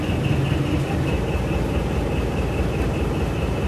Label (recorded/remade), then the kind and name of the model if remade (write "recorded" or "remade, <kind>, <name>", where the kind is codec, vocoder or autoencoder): recorded